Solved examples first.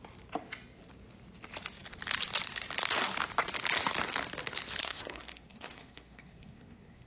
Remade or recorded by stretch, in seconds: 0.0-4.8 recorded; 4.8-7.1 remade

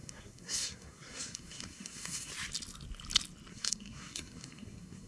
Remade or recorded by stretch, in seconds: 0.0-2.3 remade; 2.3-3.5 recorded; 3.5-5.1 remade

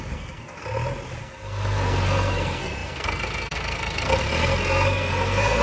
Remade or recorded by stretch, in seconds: 0.0-0.6 remade; 0.6-1.2 recorded; 1.2-5.6 remade

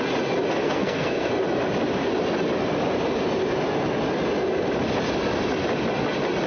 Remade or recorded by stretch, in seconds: 0.0-0.6 recorded; 0.6-1.3 remade; 1.3-6.5 recorded

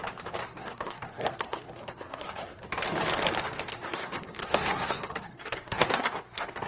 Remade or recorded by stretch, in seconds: 0.0-0.4 recorded; 0.4-2.7 remade; 2.7-3.7 recorded; 3.7-6.7 remade